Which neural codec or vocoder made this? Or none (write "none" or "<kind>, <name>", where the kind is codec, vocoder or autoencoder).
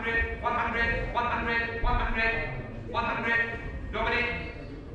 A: none